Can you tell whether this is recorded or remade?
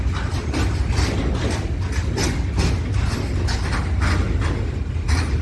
recorded